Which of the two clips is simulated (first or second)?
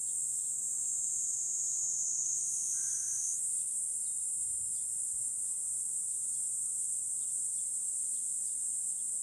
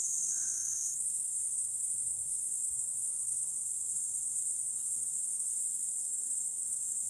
second